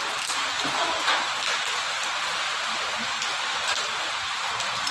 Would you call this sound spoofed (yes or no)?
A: no